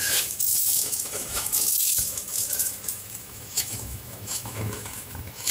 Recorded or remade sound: remade